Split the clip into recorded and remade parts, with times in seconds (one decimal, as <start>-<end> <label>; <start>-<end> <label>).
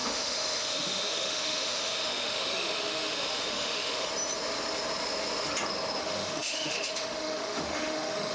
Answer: 0.0-4.1 remade; 4.1-6.0 recorded; 6.0-8.3 remade